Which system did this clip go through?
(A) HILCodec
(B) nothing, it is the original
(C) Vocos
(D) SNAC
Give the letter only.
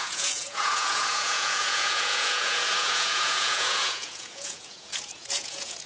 C